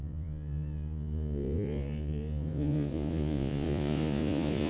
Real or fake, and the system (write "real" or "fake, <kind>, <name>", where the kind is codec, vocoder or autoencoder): fake, vocoder, Vocos